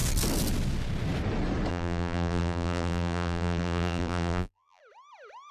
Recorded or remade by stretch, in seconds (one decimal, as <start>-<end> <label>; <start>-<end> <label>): 0.0-1.7 recorded; 1.7-4.8 remade; 4.8-5.5 recorded